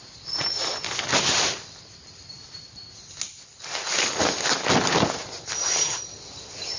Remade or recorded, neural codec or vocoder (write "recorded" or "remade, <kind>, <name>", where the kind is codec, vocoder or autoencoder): recorded